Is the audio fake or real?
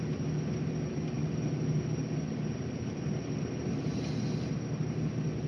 real